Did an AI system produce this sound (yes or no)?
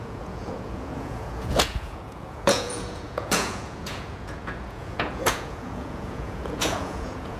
yes